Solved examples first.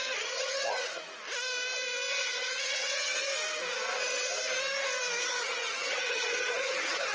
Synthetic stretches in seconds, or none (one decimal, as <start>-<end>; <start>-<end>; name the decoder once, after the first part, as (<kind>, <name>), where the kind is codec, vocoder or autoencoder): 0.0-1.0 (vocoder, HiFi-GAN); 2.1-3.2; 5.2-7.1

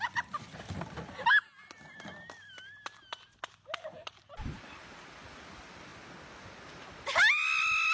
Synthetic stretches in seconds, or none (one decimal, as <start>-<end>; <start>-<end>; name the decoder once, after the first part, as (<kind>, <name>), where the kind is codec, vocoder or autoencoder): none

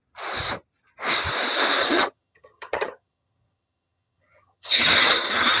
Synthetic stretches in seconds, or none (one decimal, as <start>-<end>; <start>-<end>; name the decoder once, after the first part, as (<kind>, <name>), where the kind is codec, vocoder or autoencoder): 1.8-5.6 (vocoder, HiFi-GAN)

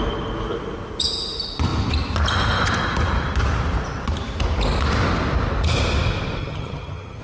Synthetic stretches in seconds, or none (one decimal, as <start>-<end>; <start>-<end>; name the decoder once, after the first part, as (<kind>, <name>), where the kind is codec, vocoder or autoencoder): 6.4-7.2 (vocoder, HiFi-GAN)